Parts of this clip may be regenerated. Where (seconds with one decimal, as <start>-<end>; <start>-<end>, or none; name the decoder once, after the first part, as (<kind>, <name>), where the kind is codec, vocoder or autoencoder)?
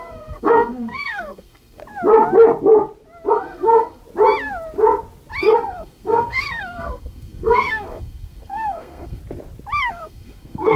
0.0-1.8 (codec, SNAC); 3.3-4.0; 5.4-9.2; 9.9-10.8